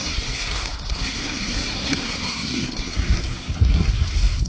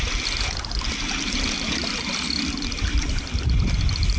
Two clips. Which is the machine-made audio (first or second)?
first